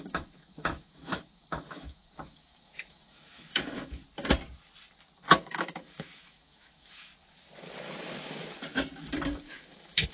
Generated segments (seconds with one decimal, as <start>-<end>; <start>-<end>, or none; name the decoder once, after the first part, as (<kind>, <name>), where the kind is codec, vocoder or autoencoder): 0.0-4.0 (autoencoder, DAC-VAE); 5.4-7.1; 9.5-10.1